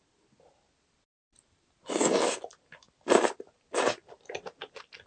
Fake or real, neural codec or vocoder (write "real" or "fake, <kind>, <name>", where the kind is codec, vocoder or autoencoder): real